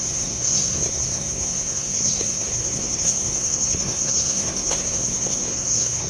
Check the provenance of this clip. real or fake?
fake